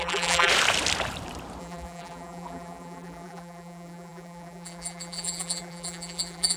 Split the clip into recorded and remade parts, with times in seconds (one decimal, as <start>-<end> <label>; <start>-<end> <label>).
0.0-0.5 remade; 0.5-1.6 recorded; 1.6-6.6 remade